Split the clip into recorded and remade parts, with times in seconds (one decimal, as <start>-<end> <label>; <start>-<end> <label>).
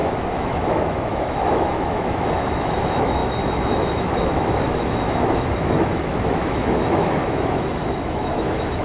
0.0-8.8 remade